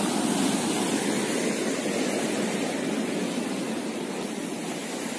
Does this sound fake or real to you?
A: real